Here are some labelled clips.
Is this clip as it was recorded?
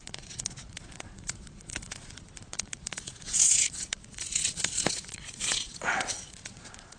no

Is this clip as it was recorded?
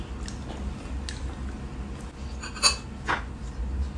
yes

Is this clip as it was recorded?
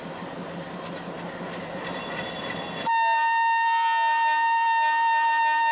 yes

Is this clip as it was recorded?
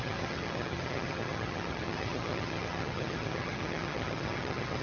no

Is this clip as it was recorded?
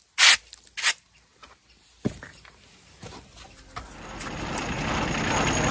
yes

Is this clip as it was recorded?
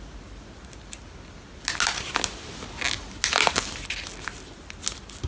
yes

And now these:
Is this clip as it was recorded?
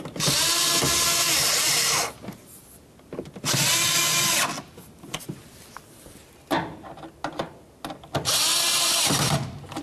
yes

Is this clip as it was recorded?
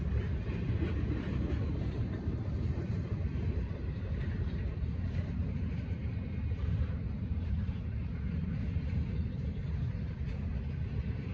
no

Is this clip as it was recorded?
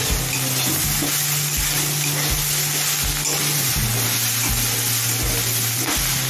yes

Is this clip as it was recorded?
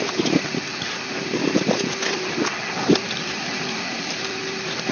yes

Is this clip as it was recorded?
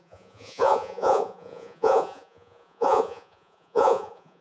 no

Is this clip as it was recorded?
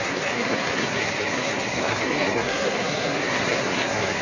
no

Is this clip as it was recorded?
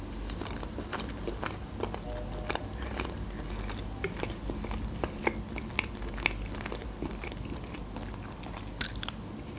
yes